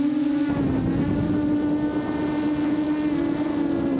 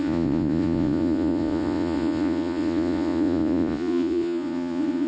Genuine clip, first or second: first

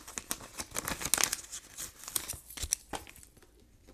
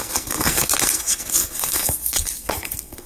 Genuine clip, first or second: first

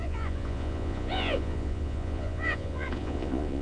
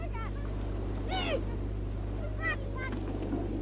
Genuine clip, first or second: second